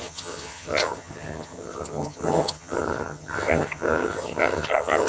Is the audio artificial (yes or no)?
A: yes